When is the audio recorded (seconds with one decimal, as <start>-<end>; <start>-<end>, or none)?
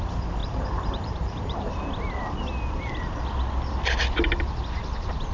0.0-0.4; 1.8-5.3